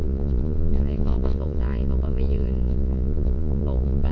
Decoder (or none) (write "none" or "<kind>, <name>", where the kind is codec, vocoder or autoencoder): vocoder, Vocos